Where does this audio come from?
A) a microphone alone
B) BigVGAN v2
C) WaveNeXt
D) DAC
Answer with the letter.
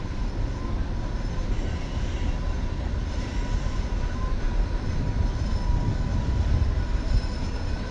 A